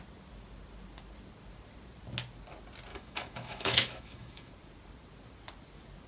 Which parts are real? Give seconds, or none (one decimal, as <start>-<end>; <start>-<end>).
0.0-2.9; 4.5-6.1